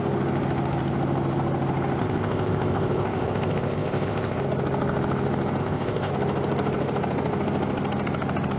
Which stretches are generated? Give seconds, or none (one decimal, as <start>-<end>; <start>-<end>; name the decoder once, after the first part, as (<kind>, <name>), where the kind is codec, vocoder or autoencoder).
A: 2.0-4.4 (codec, ZipCodec); 5.6-6.1